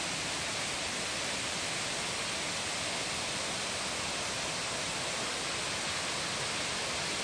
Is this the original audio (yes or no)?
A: yes